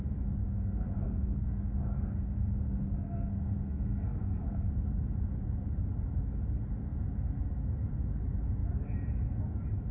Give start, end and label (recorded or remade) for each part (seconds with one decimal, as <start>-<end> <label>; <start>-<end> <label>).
0.0-0.4 recorded; 0.4-4.7 remade; 4.7-9.9 recorded